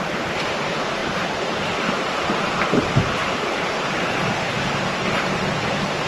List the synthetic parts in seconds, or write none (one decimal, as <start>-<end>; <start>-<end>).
1.0-4.7